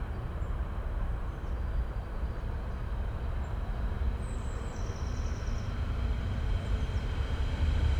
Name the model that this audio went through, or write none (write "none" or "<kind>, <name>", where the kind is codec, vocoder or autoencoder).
vocoder, BigVGAN v2